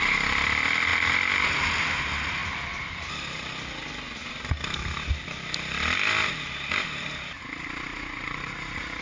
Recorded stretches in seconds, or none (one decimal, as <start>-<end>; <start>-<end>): 0.0-7.9